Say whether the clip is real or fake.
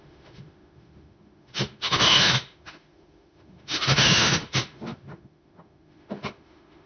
fake